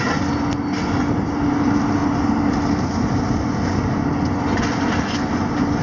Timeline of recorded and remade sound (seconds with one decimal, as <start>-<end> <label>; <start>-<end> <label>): 0.0-5.8 recorded